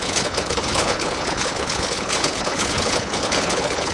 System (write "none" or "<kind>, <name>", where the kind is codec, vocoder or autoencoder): codec, HILCodec